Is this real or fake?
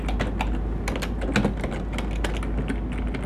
real